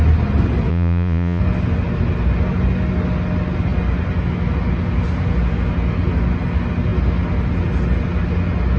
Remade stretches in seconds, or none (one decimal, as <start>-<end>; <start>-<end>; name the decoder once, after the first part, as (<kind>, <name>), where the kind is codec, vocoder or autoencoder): 0.7-1.4 (vocoder, Vocos)